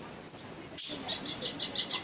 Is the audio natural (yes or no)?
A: yes